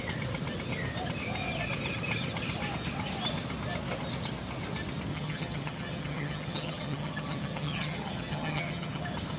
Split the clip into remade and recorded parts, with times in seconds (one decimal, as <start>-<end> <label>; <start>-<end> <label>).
0.0-5.1 recorded; 5.1-9.0 remade; 9.0-9.4 recorded